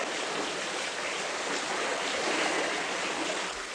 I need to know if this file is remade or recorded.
recorded